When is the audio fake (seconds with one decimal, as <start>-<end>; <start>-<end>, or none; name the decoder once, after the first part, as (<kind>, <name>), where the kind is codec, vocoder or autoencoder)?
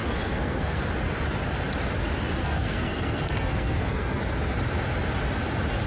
0.0-0.8 (codec, SNAC); 2.4-4.2